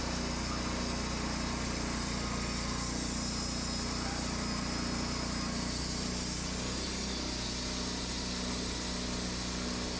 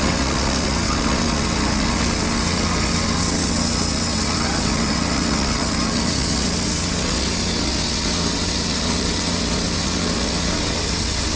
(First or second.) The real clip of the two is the first